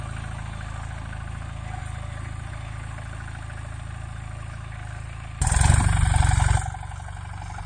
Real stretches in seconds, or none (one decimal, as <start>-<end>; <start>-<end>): 0.0-1.8; 2.5-7.7